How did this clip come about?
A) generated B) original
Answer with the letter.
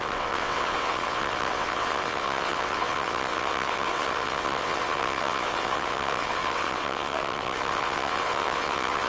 A